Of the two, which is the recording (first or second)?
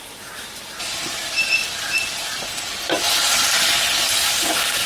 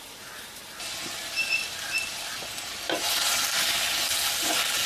second